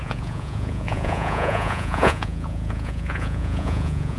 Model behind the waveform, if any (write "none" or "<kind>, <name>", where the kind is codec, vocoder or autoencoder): vocoder, Vocos